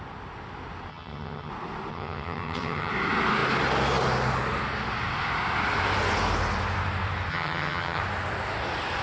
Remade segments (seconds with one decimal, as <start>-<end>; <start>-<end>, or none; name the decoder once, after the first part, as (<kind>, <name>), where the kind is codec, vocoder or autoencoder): 0.9-1.5 (vocoder, HiFi-GAN); 1.9-2.9; 7.3-8.0